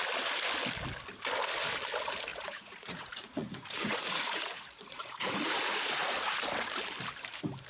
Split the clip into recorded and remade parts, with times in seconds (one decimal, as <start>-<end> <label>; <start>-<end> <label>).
0.0-2.3 recorded; 2.3-6.4 remade; 6.4-7.7 recorded